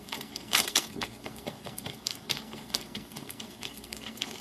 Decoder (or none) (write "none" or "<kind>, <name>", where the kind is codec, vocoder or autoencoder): codec, SNAC